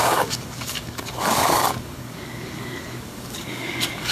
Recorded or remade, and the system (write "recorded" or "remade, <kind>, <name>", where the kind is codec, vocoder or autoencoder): remade, codec, DAC